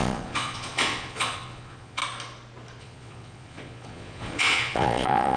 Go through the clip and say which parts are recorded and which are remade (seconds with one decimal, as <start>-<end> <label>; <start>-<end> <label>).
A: 0.0-2.0 remade; 2.0-2.8 recorded; 2.8-5.4 remade